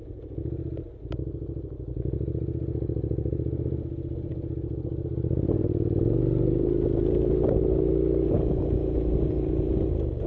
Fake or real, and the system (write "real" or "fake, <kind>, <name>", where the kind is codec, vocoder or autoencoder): real